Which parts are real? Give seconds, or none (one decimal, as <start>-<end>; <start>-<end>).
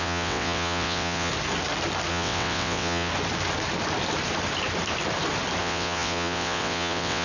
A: 1.3-2.1; 3.1-5.6